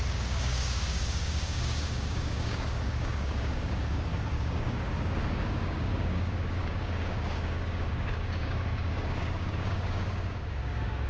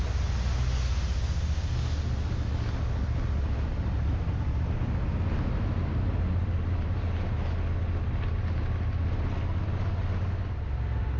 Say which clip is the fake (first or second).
first